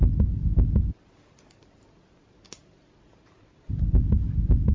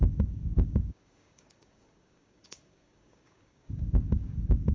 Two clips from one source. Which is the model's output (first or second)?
second